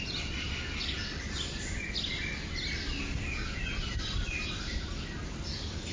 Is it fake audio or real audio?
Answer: real